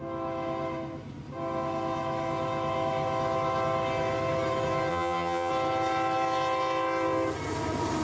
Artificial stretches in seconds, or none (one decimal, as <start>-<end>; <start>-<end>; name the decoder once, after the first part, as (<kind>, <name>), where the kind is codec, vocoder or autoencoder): 4.9-5.5 (vocoder, HiFi-GAN)